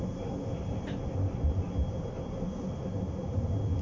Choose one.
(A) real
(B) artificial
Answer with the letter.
A